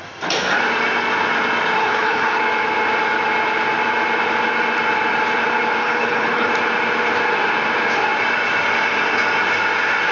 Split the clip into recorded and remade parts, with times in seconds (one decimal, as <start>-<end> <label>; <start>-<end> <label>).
0.0-1.8 recorded; 1.8-2.4 remade; 2.4-5.8 recorded; 5.8-6.5 remade; 6.5-10.1 recorded